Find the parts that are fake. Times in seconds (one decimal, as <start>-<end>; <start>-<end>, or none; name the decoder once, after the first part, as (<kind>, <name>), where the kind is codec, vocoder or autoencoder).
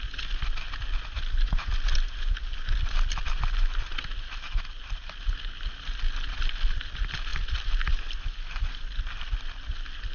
none